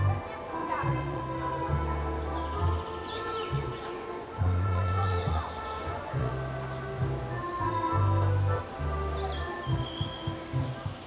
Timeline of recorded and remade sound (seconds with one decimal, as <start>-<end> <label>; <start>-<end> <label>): 0.0-0.6 recorded; 0.6-1.2 remade; 1.2-3.0 recorded; 3.0-6.3 remade; 6.3-11.1 recorded